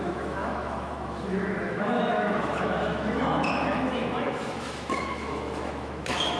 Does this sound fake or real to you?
fake